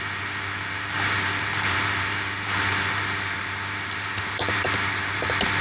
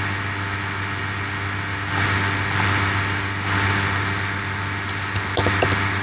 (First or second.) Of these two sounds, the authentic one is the second